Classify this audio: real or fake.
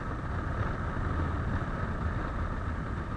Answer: real